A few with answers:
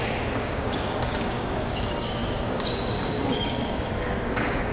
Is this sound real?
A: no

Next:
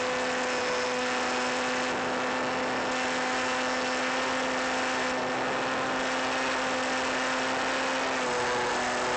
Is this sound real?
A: yes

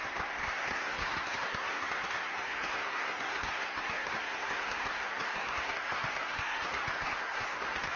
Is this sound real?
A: no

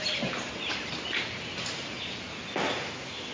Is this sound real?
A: yes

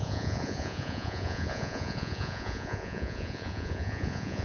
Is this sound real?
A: no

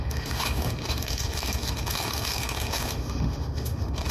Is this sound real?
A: no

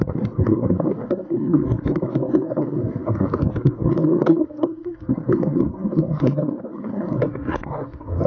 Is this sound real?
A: no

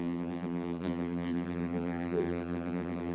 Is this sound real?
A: no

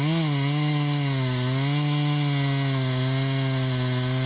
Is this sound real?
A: yes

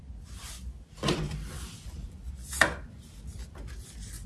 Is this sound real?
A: yes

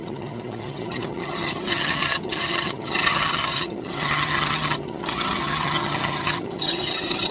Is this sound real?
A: no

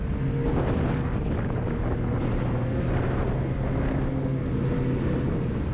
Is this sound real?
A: yes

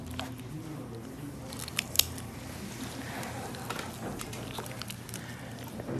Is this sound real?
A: yes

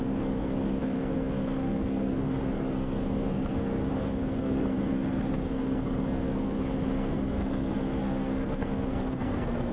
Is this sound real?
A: no